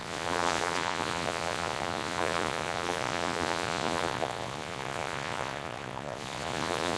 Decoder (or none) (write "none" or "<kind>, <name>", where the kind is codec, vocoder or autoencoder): vocoder, Vocos